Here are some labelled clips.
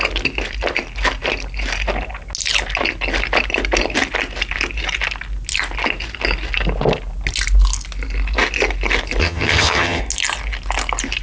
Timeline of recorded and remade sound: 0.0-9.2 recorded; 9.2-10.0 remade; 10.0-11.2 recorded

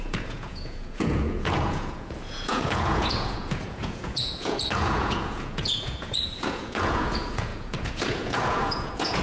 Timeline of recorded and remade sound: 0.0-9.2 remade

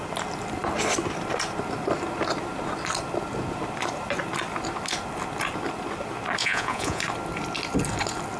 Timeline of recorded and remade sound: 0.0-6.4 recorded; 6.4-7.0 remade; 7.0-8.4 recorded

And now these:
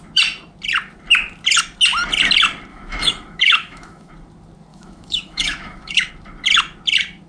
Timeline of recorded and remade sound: 0.0-2.7 recorded; 2.7-4.1 remade; 4.1-4.7 recorded; 4.7-6.1 remade; 6.1-7.3 recorded

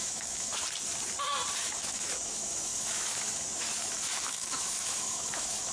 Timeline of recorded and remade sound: 0.0-0.5 remade; 0.5-1.6 recorded; 1.6-5.7 remade

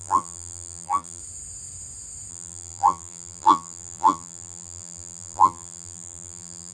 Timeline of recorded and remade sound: 0.0-1.2 remade; 1.2-2.3 recorded; 2.3-6.7 remade